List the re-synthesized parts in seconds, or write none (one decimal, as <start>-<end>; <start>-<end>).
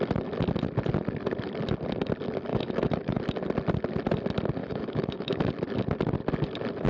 2.5-3.2; 4.6-5.5